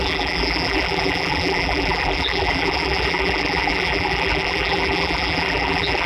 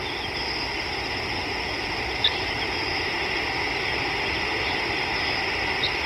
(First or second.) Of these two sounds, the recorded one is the second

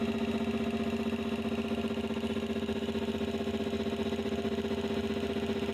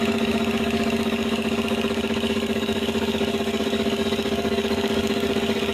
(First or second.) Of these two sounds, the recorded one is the first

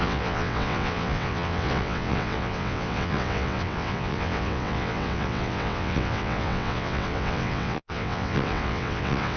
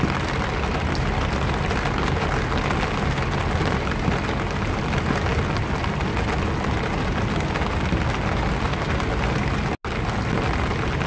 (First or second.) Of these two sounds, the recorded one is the second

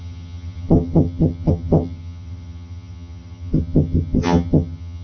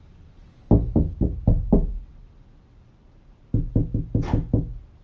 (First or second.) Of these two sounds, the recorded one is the second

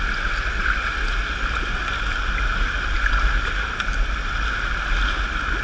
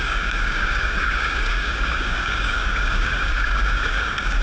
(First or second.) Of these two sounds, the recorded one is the first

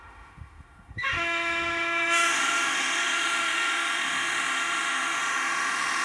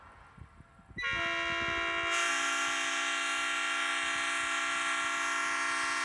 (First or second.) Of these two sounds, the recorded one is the second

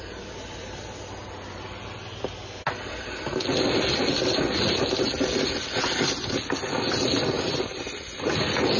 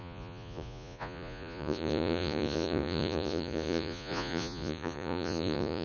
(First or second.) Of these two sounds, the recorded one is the first